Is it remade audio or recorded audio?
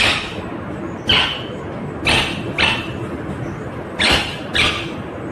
recorded